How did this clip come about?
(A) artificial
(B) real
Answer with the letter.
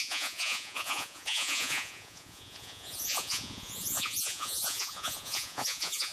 A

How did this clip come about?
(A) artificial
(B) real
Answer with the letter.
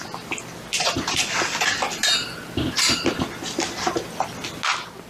B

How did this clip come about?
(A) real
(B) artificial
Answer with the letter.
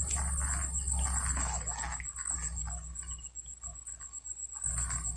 A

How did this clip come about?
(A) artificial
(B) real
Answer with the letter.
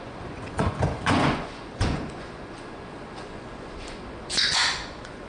A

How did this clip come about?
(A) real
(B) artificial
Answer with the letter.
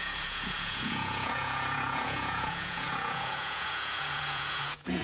B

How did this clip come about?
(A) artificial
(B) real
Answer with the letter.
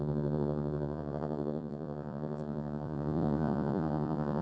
A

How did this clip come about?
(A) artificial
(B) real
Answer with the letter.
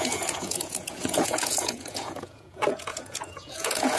A